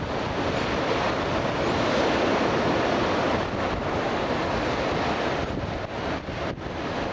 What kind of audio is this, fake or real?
real